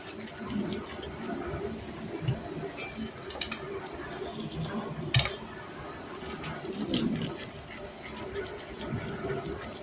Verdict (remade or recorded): recorded